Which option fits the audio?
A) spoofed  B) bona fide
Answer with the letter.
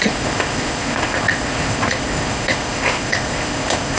A